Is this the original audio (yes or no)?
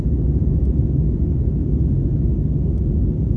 yes